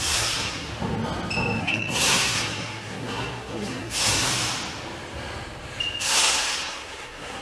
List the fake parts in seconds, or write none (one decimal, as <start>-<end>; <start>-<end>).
0.0-0.7; 1.6-4.3; 6.0-7.4